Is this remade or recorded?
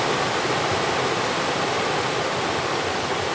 recorded